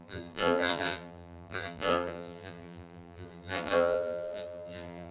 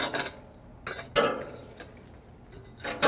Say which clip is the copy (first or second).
first